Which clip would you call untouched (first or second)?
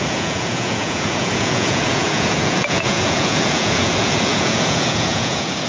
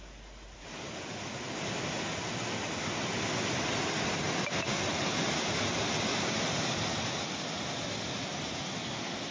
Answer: second